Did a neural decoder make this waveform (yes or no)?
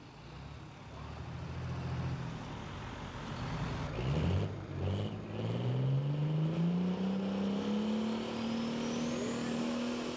no